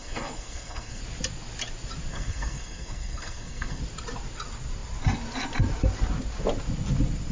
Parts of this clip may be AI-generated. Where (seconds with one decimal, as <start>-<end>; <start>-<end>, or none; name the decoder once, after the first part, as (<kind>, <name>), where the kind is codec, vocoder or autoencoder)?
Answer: 0.0-1.0 (codec, SNAC); 2.1-3.8